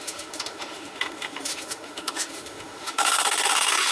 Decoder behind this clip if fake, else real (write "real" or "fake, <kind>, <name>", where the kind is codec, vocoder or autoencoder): fake, autoencoder, DAC-VAE